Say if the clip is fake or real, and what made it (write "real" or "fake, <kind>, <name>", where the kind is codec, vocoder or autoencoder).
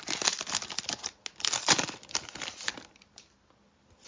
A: real